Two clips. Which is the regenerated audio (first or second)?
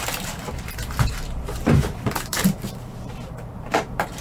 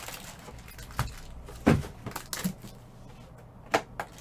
first